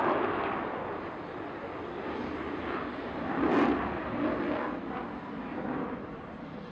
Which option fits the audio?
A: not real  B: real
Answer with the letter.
B